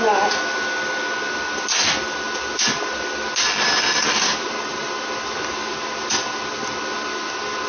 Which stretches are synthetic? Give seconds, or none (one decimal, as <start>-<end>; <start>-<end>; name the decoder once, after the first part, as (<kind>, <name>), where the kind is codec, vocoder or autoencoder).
none